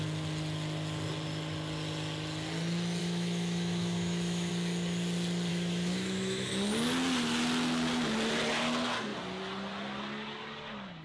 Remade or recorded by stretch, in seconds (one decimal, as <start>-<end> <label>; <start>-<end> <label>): 0.0-3.0 recorded; 3.0-4.5 remade; 4.5-5.5 recorded; 5.5-6.5 remade; 6.5-11.0 recorded